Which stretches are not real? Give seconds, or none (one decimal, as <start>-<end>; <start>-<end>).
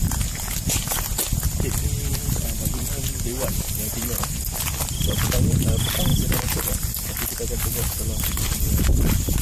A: 2.1-2.8; 6.1-9.4